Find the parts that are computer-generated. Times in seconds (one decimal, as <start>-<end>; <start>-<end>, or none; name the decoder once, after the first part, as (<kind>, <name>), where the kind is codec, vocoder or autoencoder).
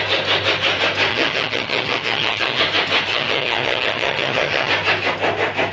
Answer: 1.1-2.6 (vocoder, HiFi-GAN); 3.1-4.7